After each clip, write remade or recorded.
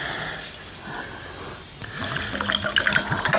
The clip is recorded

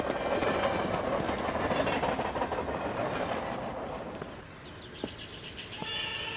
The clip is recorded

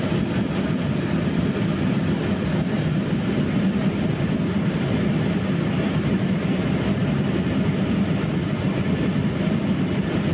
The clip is recorded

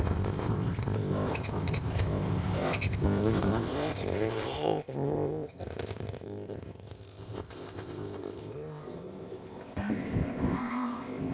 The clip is remade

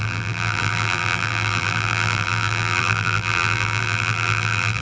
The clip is remade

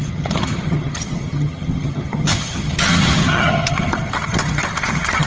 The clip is remade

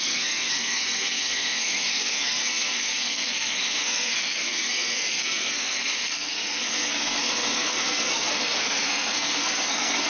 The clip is remade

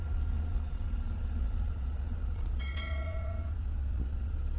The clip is remade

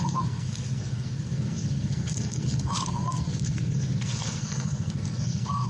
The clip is remade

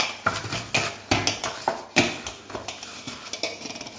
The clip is recorded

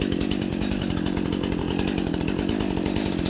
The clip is remade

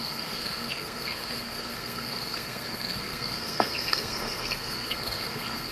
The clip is remade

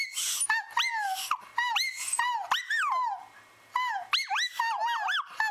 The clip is recorded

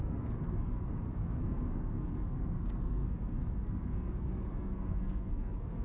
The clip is remade